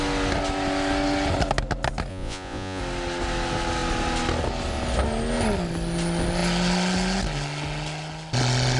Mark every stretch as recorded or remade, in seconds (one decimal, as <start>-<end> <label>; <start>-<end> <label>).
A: 0.0-2.1 recorded; 2.1-2.8 remade; 2.8-8.8 recorded